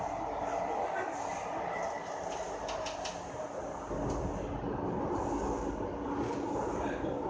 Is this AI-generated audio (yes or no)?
no